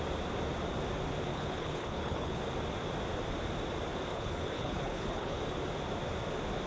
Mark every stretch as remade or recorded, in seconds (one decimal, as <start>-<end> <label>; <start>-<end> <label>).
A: 0.0-1.3 recorded; 1.3-2.4 remade; 2.4-4.1 recorded; 4.1-5.4 remade; 5.4-6.7 recorded